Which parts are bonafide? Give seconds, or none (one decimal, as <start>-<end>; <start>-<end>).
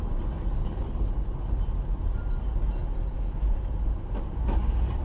0.0-0.6; 1.6-5.0